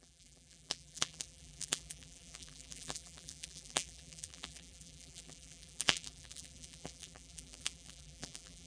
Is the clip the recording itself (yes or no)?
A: no